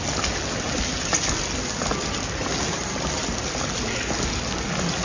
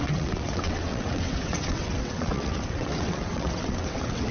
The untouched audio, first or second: first